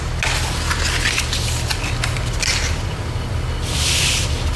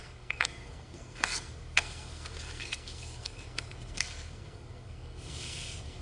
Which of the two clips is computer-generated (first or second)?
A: second